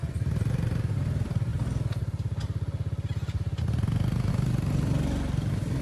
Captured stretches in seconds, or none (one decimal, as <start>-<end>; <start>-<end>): 0.0-5.8